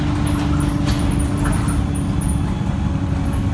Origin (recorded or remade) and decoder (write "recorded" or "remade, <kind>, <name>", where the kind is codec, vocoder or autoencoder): recorded